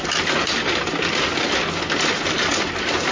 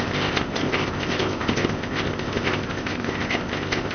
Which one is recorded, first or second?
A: first